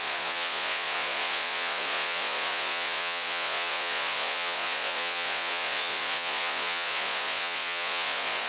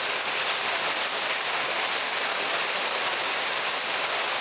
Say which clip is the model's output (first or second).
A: first